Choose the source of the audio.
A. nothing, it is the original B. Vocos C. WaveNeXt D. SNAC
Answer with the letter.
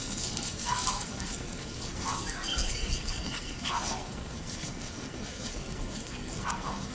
D